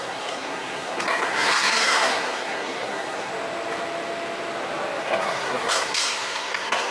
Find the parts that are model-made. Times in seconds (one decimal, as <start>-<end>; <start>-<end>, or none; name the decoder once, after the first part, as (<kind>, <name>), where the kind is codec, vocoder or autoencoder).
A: 0.0-3.3 (codec, SNAC); 5.0-6.9